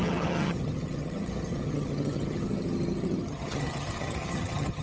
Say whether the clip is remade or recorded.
remade